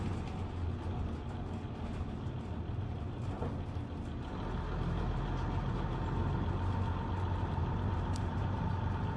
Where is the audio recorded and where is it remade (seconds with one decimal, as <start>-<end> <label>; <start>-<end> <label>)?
0.0-7.6 recorded; 7.6-8.7 remade; 8.7-9.2 recorded